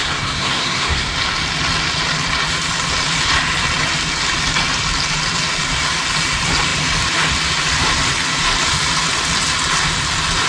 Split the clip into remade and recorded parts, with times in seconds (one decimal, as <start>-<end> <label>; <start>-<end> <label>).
0.0-1.1 remade; 1.1-10.5 recorded